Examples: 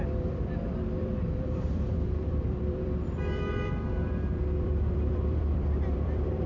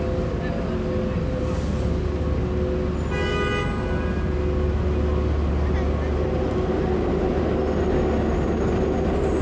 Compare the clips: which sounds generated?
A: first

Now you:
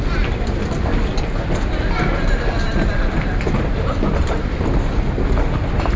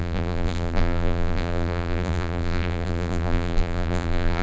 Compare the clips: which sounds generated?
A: second